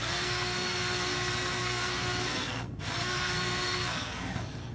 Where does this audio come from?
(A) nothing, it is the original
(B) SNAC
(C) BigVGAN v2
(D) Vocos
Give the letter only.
B